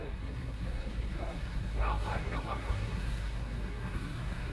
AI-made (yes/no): yes